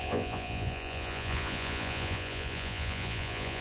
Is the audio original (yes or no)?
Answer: no